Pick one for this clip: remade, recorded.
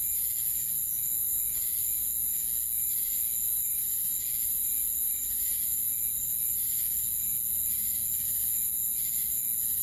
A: recorded